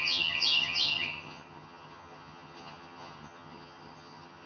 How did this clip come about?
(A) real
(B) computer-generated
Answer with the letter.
B